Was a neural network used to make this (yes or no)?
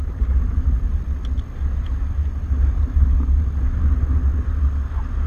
no